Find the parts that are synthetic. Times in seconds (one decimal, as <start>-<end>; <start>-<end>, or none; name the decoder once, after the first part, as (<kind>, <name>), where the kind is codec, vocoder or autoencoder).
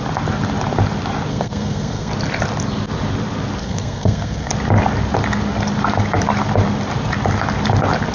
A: 1.3-2.1 (codec, SNAC); 3.6-4.5